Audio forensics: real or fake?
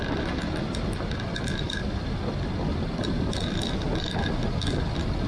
real